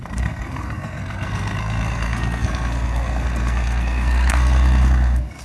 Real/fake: fake